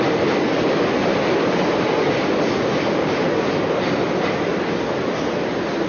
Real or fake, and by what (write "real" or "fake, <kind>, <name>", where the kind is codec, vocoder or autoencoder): real